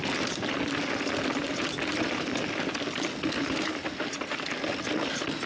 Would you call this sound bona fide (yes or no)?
yes